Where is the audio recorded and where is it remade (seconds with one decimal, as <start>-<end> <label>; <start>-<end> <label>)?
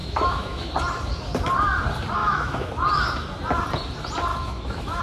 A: 0.0-0.7 remade; 0.7-2.2 recorded; 2.2-2.7 remade; 2.7-4.3 recorded; 4.3-5.0 remade